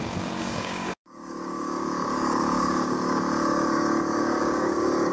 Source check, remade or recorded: remade